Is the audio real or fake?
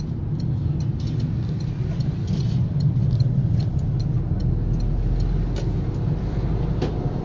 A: real